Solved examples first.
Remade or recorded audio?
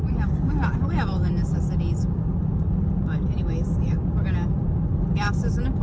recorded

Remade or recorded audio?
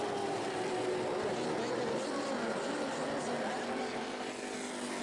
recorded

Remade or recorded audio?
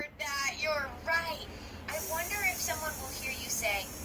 recorded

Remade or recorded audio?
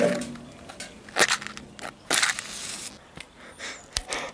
recorded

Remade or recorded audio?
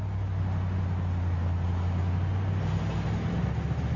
recorded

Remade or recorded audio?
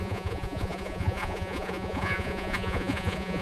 remade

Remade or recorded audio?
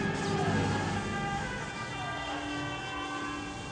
recorded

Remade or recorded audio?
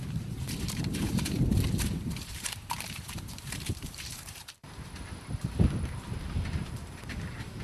remade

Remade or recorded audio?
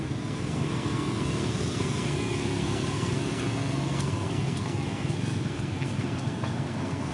remade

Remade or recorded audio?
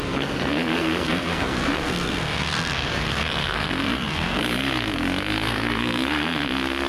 remade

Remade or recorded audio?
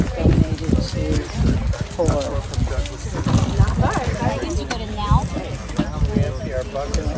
recorded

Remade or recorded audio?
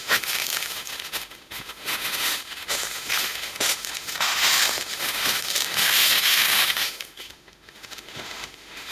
remade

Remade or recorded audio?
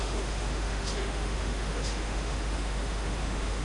remade